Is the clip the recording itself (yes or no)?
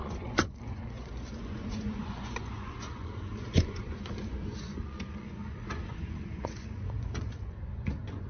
no